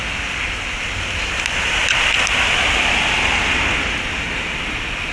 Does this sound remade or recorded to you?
recorded